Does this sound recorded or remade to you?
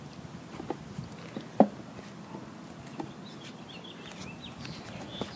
recorded